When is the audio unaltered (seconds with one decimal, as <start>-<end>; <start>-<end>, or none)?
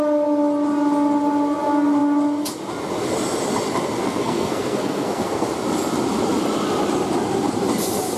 0.0-4.0; 5.5-8.2